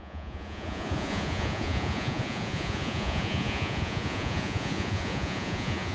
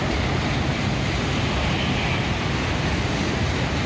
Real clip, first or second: second